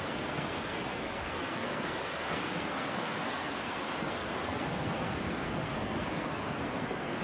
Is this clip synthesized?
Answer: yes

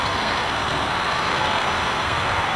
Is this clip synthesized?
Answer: yes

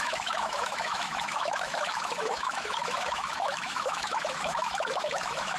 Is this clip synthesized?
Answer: yes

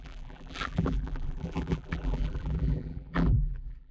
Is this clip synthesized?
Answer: yes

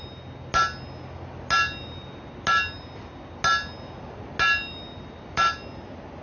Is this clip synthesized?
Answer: no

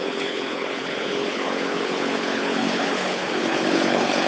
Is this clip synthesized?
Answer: yes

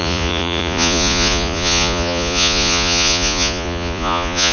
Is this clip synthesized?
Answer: yes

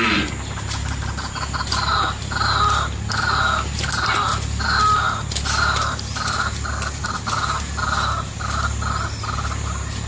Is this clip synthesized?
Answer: no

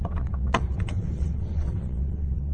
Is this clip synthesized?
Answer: yes